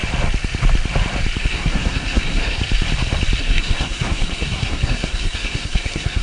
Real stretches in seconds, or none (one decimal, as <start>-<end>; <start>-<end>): 0.0-1.4; 2.6-3.4